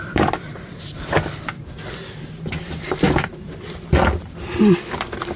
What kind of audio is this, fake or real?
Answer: fake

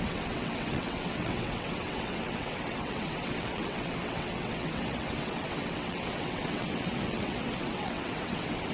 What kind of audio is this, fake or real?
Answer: fake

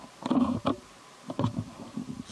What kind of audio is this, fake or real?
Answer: fake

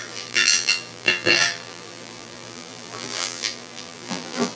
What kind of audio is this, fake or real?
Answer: fake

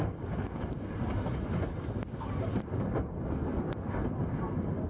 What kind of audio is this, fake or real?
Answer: real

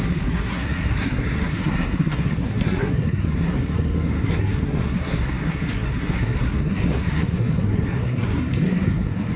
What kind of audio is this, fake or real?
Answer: fake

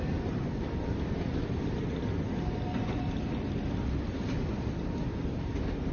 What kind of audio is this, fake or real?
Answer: real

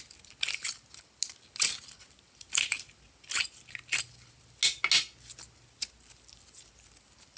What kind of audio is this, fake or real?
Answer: real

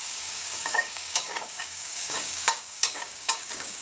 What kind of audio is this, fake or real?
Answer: fake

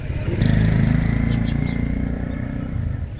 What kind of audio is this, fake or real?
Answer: real